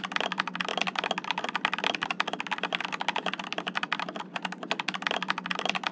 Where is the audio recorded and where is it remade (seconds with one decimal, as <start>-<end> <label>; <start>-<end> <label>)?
0.0-5.9 recorded